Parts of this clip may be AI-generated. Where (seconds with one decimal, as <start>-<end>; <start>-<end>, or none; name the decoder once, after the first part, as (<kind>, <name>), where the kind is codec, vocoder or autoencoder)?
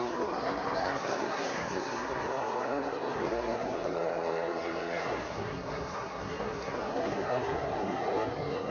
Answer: 0.0-8.7 (codec, SNAC)